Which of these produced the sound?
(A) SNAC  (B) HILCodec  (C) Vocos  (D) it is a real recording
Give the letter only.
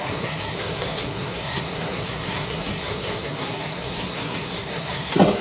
A